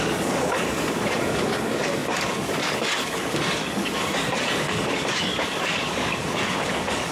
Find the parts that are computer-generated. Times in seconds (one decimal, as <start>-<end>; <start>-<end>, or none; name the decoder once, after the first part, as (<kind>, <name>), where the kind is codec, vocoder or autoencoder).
0.0-7.1 (codec, DAC)